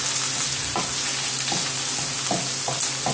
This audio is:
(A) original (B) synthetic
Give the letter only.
A